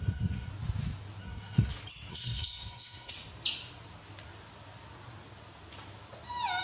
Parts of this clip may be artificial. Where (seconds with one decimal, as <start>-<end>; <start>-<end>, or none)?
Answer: 0.0-0.5; 1.2-1.7; 2.1-3.1

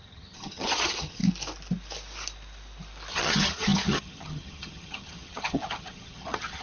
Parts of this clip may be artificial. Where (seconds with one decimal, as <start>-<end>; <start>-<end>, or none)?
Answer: 0.0-1.2; 3.1-6.6